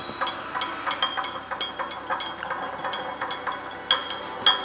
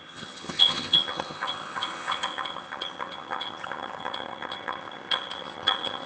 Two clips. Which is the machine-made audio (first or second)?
second